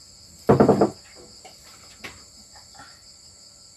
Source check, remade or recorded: recorded